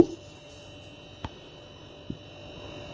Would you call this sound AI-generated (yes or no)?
no